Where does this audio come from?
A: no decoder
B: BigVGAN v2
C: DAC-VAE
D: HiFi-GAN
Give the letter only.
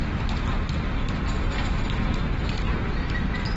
A